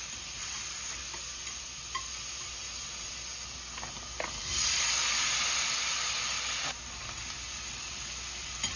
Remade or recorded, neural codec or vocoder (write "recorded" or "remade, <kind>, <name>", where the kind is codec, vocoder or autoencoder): recorded